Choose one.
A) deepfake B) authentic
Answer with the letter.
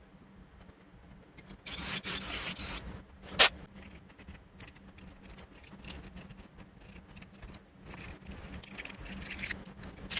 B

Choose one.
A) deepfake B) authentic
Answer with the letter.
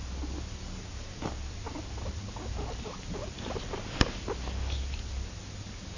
B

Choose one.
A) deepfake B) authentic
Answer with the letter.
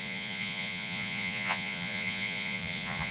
A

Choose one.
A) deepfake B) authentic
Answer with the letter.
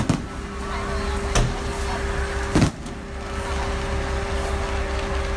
B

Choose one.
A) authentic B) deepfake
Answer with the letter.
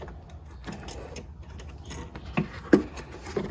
A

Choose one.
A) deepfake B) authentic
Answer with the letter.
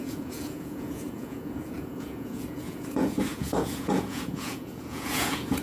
A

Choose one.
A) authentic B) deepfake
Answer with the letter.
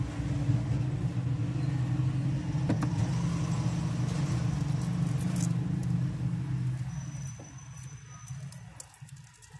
A